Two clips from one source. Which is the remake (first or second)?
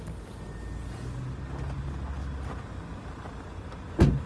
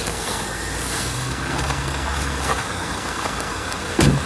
second